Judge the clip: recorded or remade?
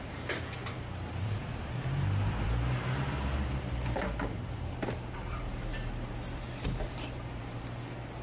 remade